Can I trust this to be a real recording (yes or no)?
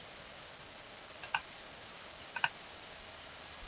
yes